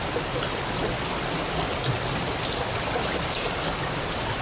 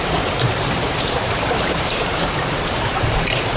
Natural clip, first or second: first